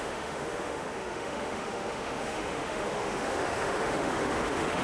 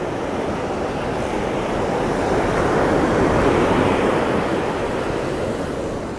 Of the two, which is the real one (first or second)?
second